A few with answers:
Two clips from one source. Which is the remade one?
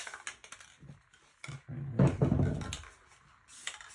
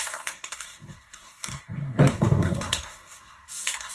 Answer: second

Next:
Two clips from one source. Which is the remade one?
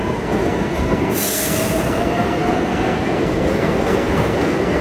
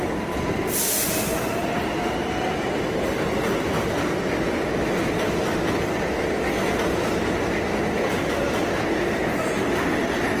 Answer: first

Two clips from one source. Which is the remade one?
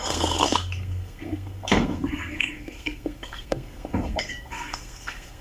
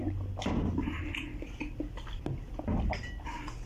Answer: first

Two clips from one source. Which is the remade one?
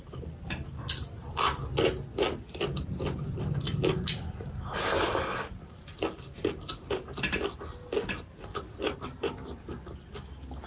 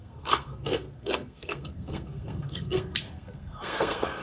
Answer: second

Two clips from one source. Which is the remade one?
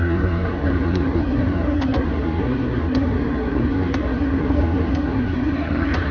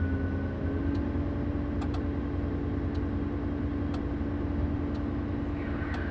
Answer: first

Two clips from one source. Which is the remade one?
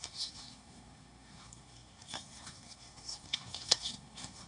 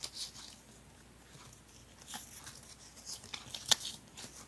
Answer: first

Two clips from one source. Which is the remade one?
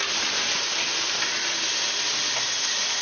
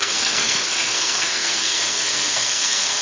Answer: second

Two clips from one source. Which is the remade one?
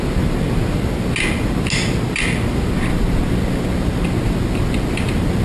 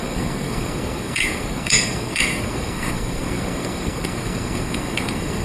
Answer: second